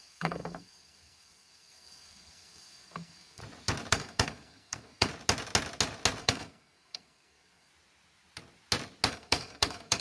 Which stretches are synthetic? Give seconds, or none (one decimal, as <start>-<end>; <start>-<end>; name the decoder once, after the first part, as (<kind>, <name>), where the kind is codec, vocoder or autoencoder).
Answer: 0.0-3.4 (codec, SNAC); 3.9-5.1; 6.2-7.7; 9.1-10.0